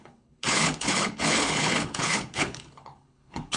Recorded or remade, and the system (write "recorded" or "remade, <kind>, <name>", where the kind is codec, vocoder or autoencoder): remade, codec, HILCodec